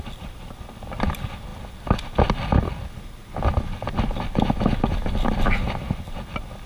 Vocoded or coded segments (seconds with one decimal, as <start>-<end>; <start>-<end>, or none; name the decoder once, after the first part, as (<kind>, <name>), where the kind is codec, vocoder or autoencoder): none